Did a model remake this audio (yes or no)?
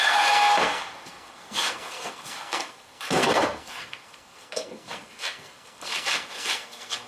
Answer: yes